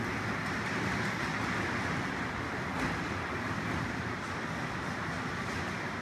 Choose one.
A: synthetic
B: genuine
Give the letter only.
B